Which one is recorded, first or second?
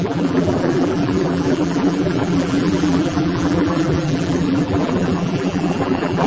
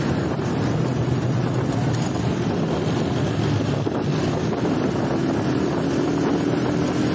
second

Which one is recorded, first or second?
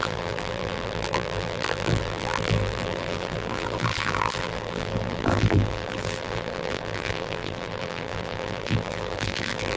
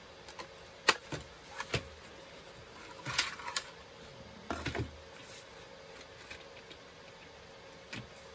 second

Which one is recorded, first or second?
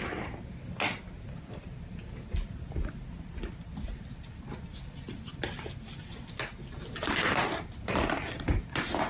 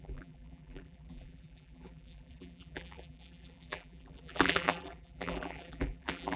first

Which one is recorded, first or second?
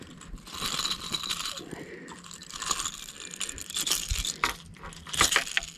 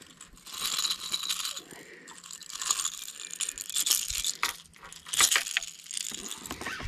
second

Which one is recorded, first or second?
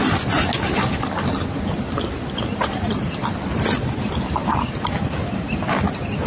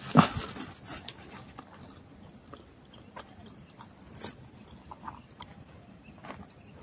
first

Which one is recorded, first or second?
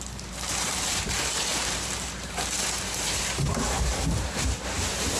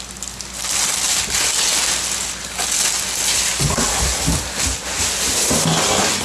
second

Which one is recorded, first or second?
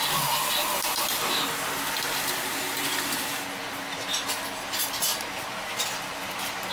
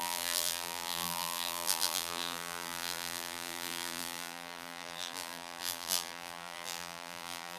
first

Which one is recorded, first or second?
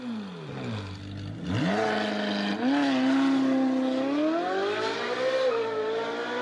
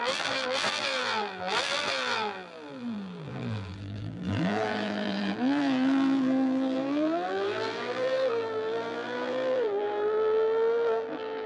first